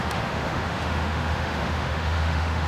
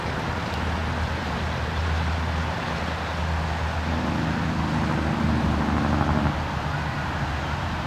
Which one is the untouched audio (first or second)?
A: second